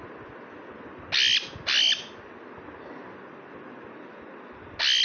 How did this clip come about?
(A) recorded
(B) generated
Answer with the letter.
A